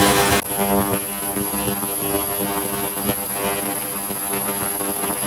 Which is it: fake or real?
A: real